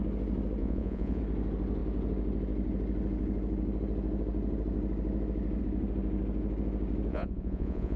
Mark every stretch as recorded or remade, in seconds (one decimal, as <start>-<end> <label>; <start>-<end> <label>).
0.0-0.6 recorded; 0.6-1.2 remade; 1.2-7.1 recorded; 7.1-8.0 remade

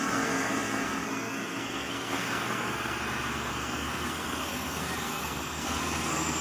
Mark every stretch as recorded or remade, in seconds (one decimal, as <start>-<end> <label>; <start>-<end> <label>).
0.0-6.4 remade

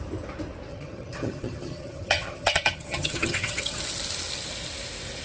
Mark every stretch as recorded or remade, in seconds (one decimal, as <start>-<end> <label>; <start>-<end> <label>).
0.0-0.7 recorded; 0.7-3.8 remade; 3.8-5.2 recorded

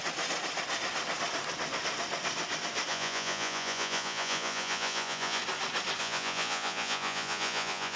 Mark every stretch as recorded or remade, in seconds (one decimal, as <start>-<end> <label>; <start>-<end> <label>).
0.0-2.9 recorded; 2.9-5.4 remade; 5.4-6.0 recorded; 6.0-8.0 remade